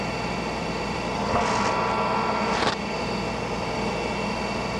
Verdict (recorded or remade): recorded